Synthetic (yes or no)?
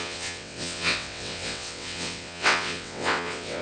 yes